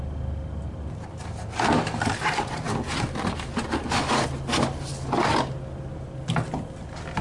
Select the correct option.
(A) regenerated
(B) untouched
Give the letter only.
B